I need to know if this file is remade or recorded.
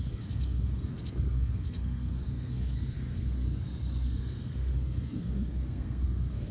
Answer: remade